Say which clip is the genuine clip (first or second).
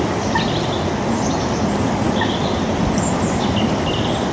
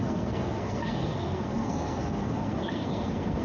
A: first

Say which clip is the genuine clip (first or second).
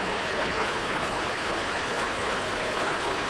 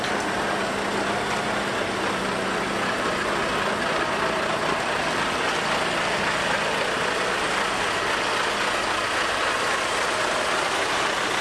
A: second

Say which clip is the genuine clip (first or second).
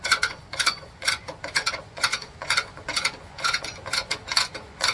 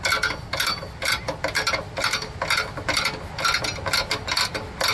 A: second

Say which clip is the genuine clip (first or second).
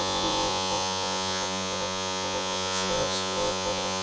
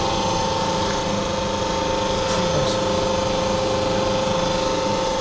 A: second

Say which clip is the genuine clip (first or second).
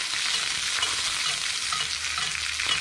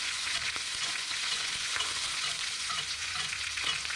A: first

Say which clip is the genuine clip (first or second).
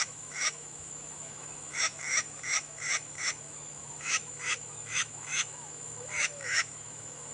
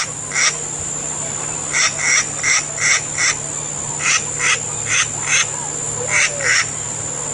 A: second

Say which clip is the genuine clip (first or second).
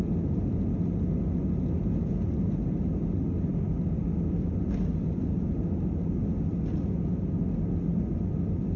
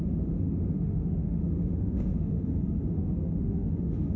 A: first